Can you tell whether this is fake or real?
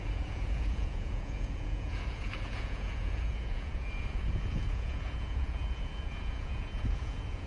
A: fake